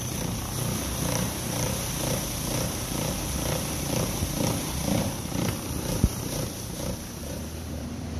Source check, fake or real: fake